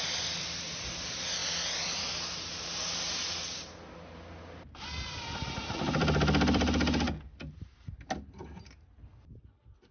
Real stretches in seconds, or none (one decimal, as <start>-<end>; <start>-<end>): 0.0-9.9